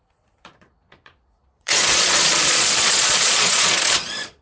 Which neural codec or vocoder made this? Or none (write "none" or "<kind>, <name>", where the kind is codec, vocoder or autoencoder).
vocoder, Vocos